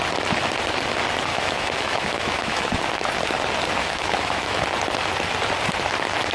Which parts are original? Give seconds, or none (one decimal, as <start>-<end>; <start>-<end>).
0.0-1.3; 2.7-3.8; 4.6-6.3